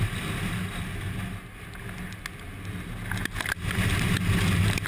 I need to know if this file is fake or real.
real